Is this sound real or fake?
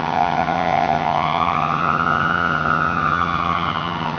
fake